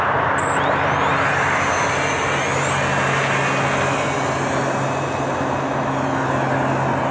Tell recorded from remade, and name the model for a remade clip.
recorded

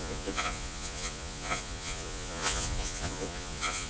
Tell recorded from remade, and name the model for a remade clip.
remade, vocoder, Vocos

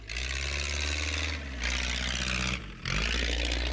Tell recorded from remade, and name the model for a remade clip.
recorded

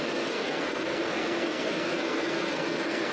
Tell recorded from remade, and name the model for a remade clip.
remade, codec, SNAC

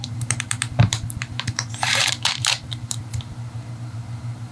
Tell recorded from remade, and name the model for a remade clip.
remade, vocoder, BigVGAN v2